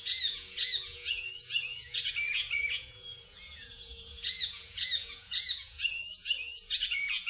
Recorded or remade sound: remade